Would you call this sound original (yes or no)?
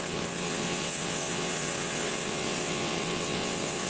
no